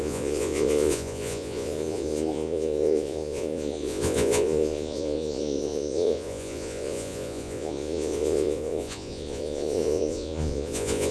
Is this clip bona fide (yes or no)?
no